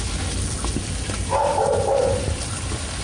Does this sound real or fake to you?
real